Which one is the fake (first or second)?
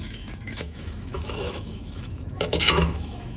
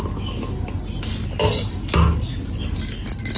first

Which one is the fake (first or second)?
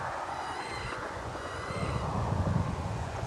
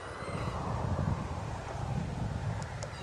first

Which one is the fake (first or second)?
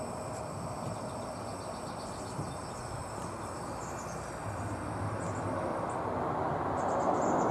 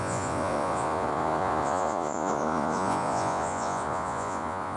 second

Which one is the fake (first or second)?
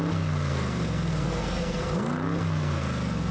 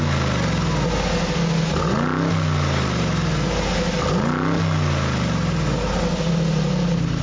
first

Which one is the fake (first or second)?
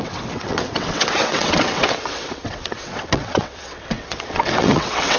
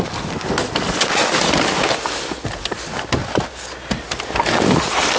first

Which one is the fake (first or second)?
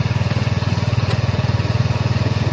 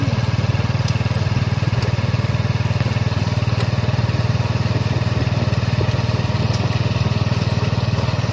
first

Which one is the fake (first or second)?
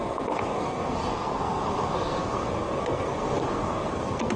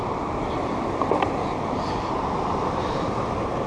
first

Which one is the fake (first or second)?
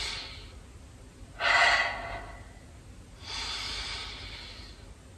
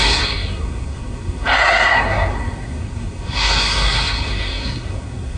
second